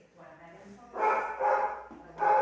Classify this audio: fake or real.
real